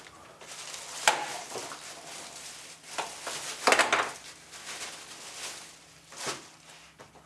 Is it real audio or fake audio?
real